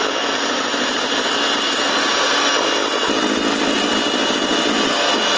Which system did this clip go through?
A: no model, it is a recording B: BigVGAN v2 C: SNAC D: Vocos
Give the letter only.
A